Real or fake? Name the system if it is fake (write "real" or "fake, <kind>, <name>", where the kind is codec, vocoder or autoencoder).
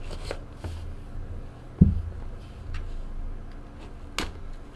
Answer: real